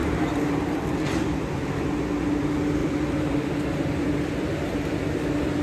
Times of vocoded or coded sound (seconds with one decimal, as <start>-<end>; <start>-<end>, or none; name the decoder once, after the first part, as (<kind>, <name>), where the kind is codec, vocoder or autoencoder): 0.0-2.0 (vocoder, BigVGAN v2); 2.8-3.5